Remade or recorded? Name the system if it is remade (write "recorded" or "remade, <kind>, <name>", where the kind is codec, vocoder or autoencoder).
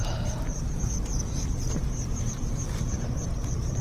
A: remade, vocoder, BigVGAN v2